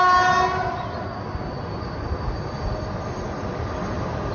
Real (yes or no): yes